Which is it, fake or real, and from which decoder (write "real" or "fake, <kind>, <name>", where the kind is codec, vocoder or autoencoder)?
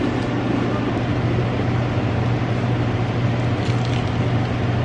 real